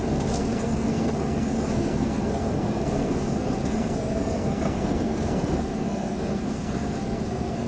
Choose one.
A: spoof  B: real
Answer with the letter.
A